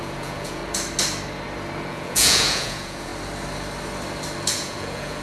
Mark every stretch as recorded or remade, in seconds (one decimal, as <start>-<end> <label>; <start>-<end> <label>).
0.0-0.6 remade; 0.6-1.9 recorded; 1.9-3.1 remade; 3.1-4.5 recorded; 4.5-5.2 remade